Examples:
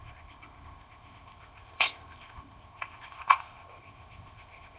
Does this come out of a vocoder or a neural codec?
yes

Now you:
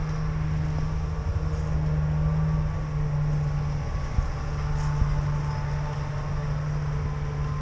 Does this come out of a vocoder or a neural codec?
no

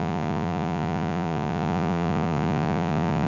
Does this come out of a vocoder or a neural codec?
yes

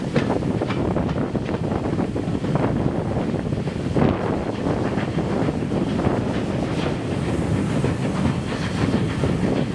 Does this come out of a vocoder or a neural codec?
no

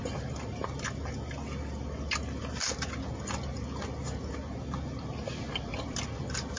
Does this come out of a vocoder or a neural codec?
no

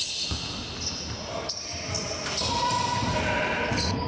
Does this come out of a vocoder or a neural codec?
no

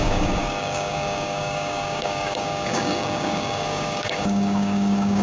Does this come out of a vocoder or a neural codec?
yes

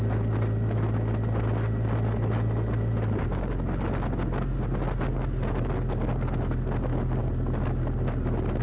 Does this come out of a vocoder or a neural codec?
no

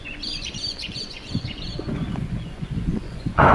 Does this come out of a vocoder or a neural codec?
yes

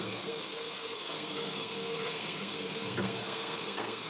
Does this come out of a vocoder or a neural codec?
yes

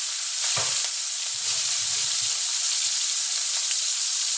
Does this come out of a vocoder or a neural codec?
yes